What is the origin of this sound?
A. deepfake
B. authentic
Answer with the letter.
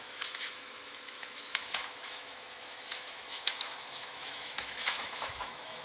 A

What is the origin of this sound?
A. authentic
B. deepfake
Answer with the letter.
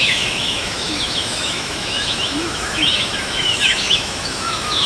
B